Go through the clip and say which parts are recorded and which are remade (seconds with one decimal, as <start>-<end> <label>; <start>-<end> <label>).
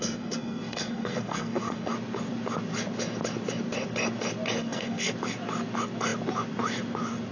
0.0-1.9 remade; 1.9-4.6 recorded; 4.6-5.1 remade; 5.1-7.3 recorded